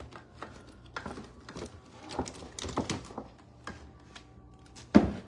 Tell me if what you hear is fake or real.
real